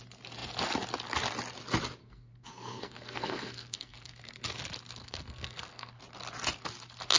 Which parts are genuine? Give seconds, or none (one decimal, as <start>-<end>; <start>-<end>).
0.0-2.0; 4.3-5.0; 6.0-7.2